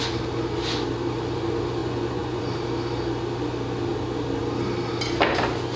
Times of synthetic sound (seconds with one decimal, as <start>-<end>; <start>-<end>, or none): 1.8-2.4